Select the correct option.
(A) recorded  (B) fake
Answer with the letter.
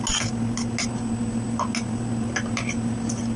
A